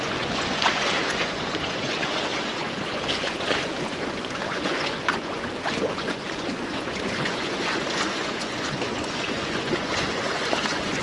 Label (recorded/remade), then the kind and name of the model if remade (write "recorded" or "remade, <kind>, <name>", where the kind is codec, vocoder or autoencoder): remade, vocoder, Vocos